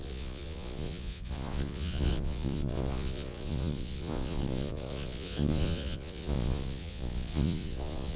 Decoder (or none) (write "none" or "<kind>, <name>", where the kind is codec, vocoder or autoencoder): vocoder, Vocos